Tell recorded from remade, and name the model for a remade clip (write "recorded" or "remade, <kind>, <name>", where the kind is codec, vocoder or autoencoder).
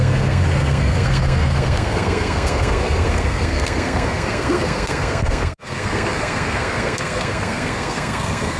remade, codec, SNAC